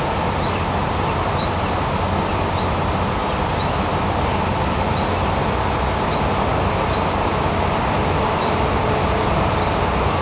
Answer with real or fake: real